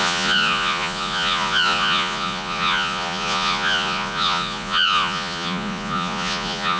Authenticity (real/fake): fake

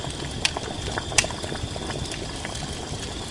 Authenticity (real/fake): real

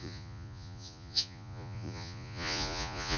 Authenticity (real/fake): fake